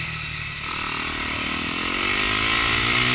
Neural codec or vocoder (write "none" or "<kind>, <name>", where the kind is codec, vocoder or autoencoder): none